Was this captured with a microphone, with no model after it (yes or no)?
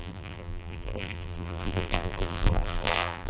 no